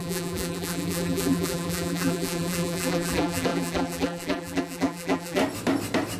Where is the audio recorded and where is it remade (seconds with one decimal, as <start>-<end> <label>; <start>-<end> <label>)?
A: 0.0-5.4 remade; 5.4-6.2 recorded